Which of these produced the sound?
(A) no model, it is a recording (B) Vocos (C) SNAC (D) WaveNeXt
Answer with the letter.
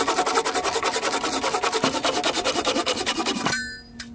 A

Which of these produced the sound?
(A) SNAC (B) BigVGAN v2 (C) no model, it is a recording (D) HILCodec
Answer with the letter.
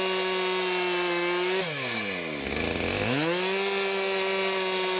C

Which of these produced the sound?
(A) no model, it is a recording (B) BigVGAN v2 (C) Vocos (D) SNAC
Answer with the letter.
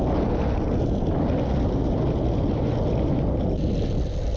A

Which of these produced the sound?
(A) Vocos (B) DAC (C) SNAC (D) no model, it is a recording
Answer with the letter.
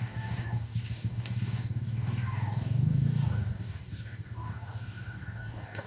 B